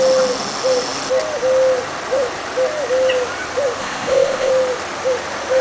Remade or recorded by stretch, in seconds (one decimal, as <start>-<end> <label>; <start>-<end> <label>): 0.0-3.8 recorded; 3.8-4.5 remade; 4.5-5.6 recorded